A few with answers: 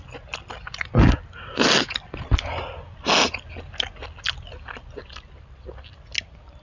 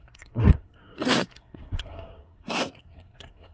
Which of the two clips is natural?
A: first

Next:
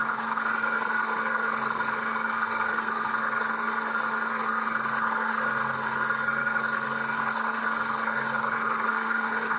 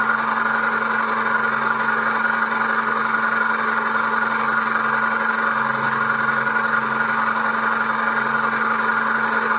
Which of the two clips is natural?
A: second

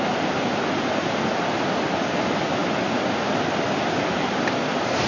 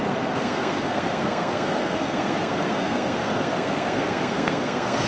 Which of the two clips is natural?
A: first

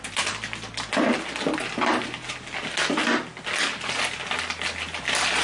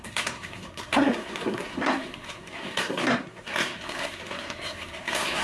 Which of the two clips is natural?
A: first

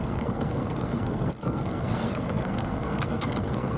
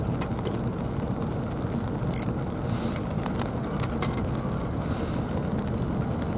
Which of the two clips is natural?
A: second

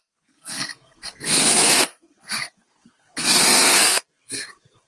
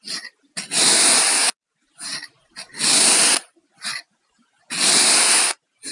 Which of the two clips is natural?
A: second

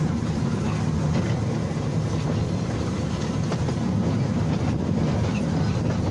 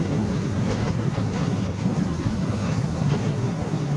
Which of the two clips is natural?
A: first